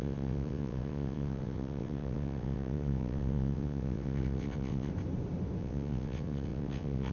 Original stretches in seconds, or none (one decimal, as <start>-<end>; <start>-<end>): 4.9-5.6